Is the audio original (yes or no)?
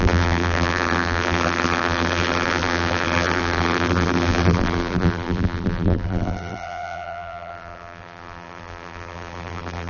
no